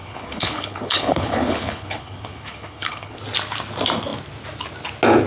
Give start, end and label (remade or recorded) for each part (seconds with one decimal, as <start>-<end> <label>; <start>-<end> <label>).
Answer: 0.0-3.2 remade; 3.2-5.3 recorded